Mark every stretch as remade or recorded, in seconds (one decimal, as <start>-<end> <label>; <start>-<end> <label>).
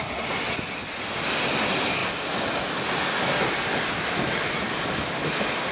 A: 0.0-5.7 recorded